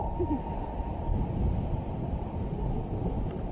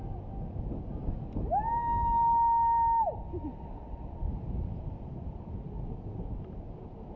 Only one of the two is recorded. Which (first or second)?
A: second